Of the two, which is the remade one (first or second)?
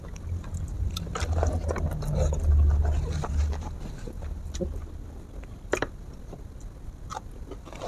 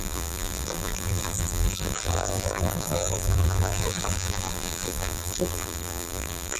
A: second